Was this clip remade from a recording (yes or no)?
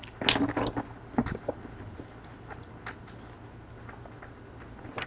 no